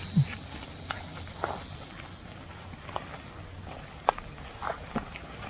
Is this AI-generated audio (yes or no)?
no